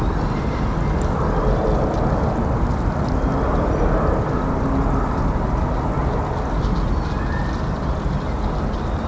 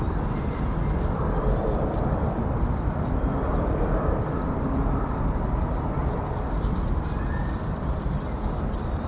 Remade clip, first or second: second